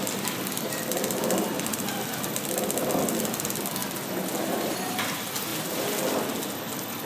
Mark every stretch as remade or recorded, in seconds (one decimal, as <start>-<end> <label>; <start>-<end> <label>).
0.0-7.1 recorded